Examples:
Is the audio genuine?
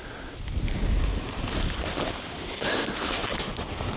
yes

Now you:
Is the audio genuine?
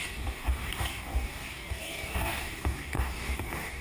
no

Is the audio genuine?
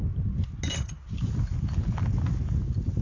yes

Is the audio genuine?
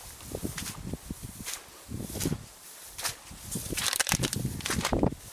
yes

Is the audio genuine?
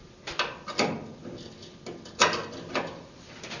yes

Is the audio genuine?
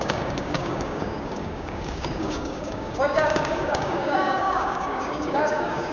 no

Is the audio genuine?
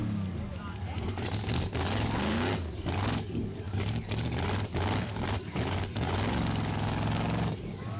no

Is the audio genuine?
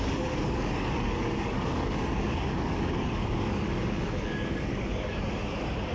no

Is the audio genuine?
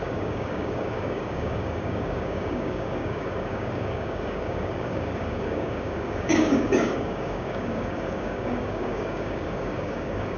no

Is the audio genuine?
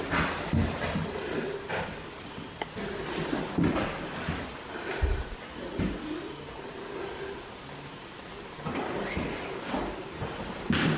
yes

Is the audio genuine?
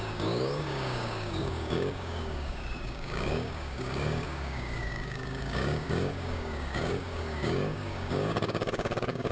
no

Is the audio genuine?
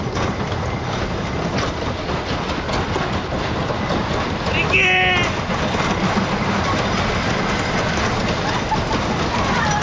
yes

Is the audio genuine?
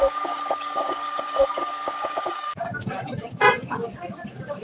no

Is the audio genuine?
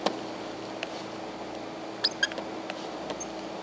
yes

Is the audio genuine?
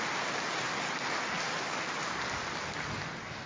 yes